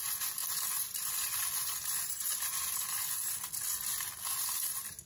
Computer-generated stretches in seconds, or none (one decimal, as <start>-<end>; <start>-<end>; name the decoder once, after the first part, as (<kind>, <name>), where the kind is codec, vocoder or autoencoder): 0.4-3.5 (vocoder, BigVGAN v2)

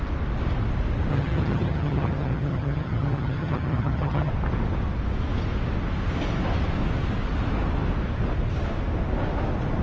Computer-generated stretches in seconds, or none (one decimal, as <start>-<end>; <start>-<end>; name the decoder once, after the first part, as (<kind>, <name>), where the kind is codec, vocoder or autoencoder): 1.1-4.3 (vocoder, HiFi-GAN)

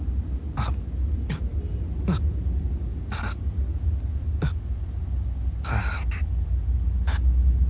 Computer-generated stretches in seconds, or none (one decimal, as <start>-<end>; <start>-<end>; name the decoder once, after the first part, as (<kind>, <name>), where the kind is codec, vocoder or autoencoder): none

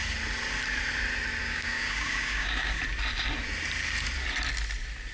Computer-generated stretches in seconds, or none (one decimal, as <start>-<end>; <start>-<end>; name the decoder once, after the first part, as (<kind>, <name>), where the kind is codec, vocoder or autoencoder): 1.4-2.8 (codec, DAC)

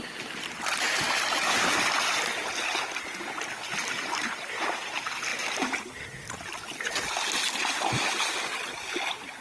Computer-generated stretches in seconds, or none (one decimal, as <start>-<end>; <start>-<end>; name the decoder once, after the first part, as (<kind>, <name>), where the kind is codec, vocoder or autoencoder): none

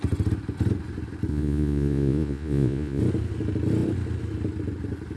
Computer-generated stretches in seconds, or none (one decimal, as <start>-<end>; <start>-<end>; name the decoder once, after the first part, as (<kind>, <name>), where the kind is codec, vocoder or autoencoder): 1.3-3.0 (vocoder, Vocos)

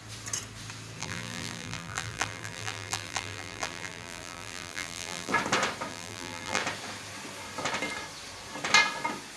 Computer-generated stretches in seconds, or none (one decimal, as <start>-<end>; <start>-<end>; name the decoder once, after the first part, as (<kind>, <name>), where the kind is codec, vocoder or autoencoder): 1.0-5.3 (vocoder, BigVGAN v2); 5.9-6.6

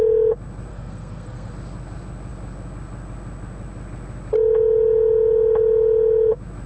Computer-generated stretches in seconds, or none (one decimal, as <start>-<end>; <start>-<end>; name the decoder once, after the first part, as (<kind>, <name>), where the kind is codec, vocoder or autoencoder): 0.7-1.5 (codec, SNAC)